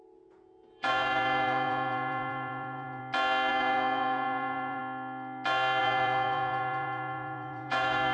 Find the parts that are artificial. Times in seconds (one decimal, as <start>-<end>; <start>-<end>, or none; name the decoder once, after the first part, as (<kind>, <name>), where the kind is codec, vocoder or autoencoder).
0.0-3.0 (vocoder, Vocos); 3.5-4.8; 5.8-8.1